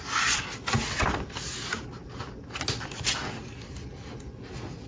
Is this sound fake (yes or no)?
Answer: no